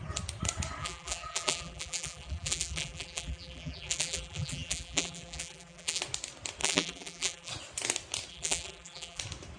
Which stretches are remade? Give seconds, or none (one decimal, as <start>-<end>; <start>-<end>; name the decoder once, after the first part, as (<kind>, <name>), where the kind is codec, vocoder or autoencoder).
0.8-6.0 (vocoder, BigVGAN v2); 6.6-7.5; 8.3-9.2